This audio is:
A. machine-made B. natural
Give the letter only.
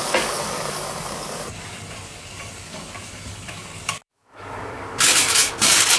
A